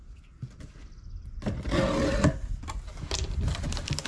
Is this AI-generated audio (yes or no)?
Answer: no